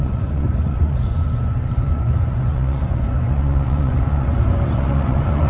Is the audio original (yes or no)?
no